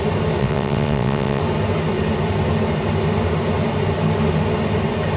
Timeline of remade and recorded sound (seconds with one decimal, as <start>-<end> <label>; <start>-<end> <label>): 0.0-0.4 recorded; 0.4-1.4 remade; 1.4-5.2 recorded